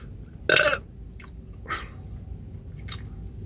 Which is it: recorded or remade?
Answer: recorded